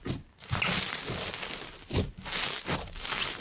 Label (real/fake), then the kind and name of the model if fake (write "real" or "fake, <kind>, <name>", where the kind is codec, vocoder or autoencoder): real